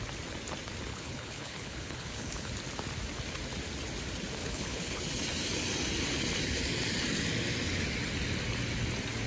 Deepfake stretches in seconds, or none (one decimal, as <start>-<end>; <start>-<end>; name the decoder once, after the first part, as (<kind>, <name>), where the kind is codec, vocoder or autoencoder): 0.9-2.5 (codec, HILCodec); 4.4-5.0